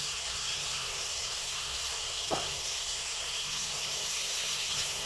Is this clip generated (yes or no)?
yes